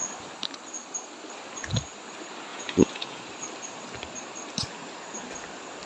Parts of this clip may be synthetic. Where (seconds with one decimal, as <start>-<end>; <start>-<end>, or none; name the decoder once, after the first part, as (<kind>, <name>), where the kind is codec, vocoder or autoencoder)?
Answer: 2.5-3.2 (vocoder, Vocos)